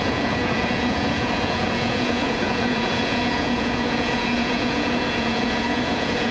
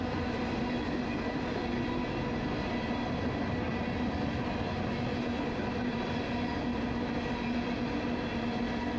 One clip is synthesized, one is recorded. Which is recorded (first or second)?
second